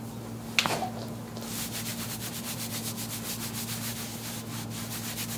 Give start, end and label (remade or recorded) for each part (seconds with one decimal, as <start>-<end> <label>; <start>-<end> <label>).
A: 0.0-1.9 recorded; 1.9-2.7 remade; 2.7-5.4 recorded